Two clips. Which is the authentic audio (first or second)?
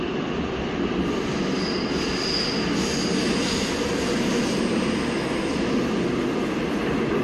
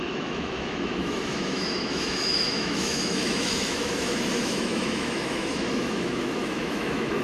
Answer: first